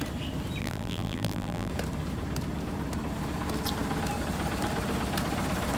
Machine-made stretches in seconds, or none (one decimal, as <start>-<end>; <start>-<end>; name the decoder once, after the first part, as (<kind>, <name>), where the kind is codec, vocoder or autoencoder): 0.6-1.7 (vocoder, BigVGAN v2)